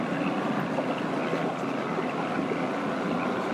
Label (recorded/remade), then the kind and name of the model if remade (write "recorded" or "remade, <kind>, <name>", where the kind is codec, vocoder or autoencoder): recorded